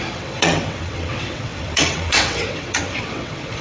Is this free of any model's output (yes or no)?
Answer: no